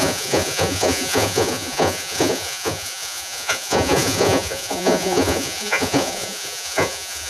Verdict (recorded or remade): remade